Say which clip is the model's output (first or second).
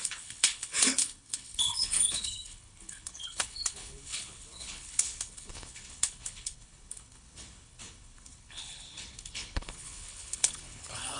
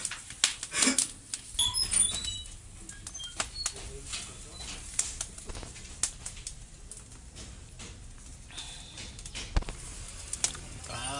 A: first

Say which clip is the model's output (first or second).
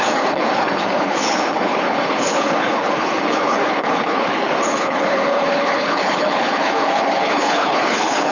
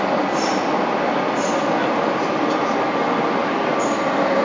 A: first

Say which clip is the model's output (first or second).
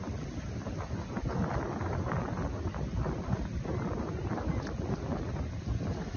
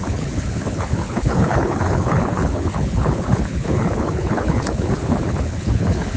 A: second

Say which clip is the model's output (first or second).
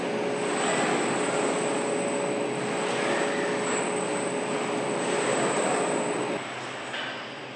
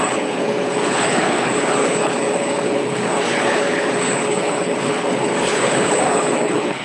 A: second